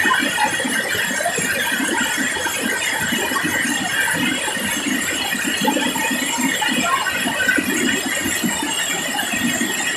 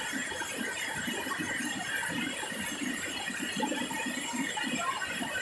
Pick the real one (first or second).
first